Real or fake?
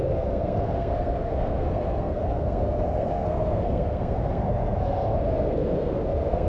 fake